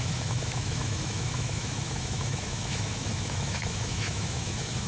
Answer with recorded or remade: remade